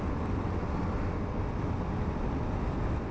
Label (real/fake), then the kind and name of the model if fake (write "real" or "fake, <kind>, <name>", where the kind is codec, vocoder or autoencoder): real